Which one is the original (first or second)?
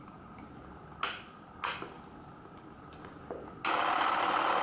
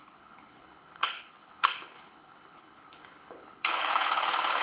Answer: first